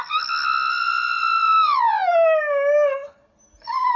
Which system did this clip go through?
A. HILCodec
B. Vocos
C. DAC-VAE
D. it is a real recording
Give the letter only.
D